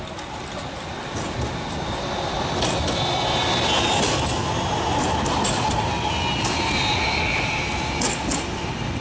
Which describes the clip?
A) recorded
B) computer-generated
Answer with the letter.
A